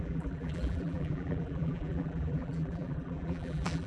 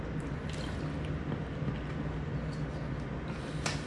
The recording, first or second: second